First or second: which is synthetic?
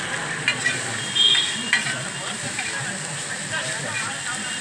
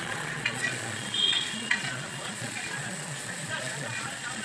second